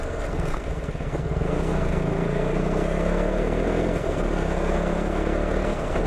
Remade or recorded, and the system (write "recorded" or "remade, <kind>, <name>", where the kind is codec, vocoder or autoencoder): remade, codec, SNAC